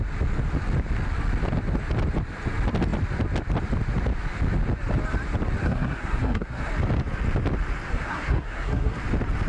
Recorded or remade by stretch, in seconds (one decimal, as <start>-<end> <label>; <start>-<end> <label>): 0.0-5.6 recorded; 5.6-6.7 remade; 6.7-7.9 recorded; 7.9-9.0 remade; 9.0-9.5 recorded